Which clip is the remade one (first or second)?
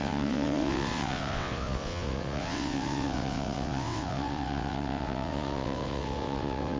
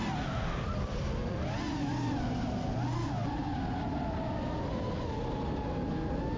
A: first